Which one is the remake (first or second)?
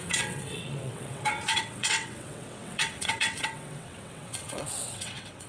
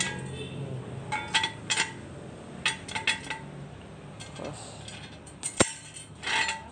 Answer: first